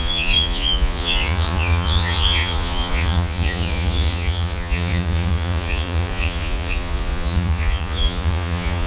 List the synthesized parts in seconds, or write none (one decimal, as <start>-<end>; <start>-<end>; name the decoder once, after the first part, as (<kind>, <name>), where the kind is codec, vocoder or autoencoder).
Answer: 0.0-8.9 (vocoder, Vocos)

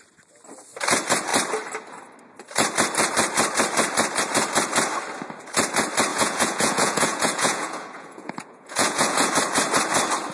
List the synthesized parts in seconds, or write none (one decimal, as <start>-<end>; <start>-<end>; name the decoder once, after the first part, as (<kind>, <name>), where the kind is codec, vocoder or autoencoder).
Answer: 6.1-9.3 (vocoder, Vocos)

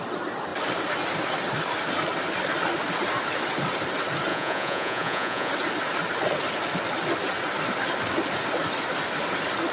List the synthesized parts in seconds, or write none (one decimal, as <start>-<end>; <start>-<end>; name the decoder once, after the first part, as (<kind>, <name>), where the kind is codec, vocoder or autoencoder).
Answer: 4.3-5.5 (vocoder, Vocos)

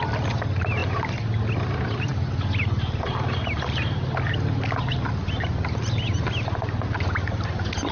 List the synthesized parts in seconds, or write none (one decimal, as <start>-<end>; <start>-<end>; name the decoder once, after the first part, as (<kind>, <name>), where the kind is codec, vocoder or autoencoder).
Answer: none